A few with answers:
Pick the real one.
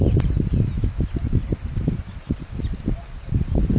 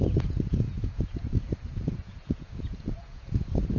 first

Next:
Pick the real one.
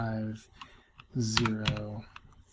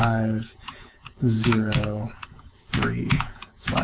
first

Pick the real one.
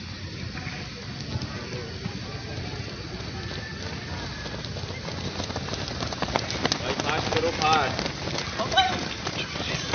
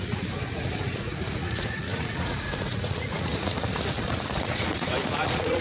first